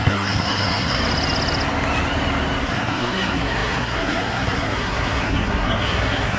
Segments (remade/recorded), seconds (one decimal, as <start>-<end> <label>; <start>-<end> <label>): 0.0-1.0 remade; 1.0-2.6 recorded; 2.6-6.4 remade